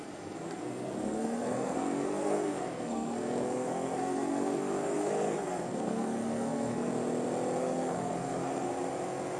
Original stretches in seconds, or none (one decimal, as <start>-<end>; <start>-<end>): 6.9-7.6; 8.7-9.4